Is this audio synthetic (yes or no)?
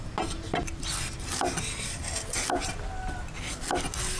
no